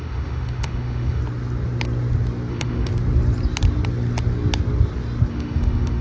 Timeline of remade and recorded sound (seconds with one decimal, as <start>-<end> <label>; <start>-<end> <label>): 0.0-1.2 remade; 1.2-2.5 recorded; 2.5-2.9 remade; 2.9-5.3 recorded; 5.3-6.0 remade